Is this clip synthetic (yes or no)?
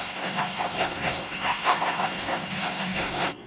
yes